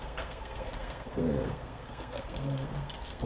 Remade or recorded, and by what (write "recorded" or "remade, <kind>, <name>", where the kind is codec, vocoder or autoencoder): remade, codec, SNAC